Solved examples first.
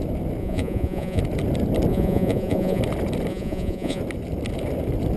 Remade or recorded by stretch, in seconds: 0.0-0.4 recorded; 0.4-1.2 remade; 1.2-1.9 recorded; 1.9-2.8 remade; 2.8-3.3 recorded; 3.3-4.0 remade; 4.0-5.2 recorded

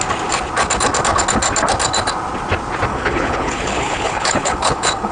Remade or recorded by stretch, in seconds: 0.0-2.9 recorded; 2.9-5.1 remade